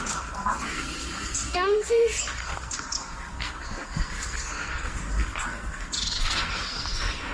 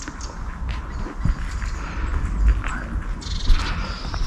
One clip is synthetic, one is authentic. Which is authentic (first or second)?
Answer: second